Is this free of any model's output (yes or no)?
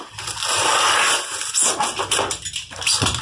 yes